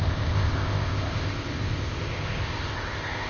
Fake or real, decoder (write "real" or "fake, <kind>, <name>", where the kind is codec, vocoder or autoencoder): fake, codec, ZipCodec